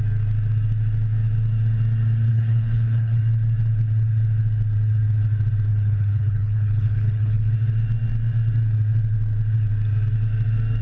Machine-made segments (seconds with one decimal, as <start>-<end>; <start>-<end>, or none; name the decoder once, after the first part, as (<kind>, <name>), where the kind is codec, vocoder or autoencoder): 2.3-3.2 (codec, HILCodec); 5.7-7.5